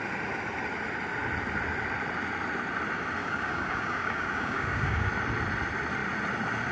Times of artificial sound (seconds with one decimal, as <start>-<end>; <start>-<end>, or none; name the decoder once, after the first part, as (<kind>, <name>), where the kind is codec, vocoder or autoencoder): 3.2-5.1 (codec, DAC)